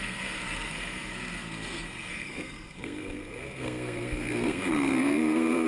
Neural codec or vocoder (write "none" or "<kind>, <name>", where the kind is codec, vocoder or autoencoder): codec, SNAC